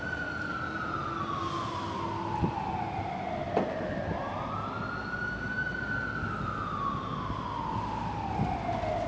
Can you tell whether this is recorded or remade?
recorded